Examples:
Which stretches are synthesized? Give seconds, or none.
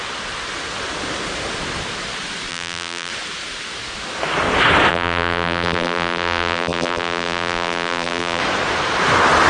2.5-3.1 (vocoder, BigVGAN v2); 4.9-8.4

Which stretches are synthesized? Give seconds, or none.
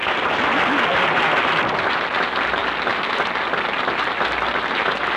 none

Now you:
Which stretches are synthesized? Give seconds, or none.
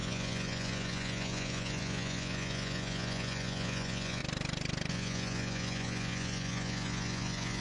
0.0-4.2 (vocoder, Vocos); 4.9-7.6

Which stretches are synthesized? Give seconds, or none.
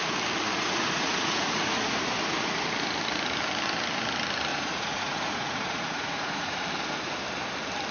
0.5-2.0 (vocoder, Vocos); 4.5-6.6